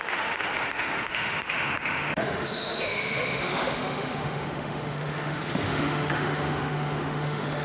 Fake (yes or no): yes